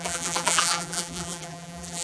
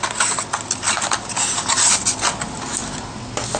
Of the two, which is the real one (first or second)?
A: second